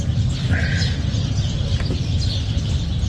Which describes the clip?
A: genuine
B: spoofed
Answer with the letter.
A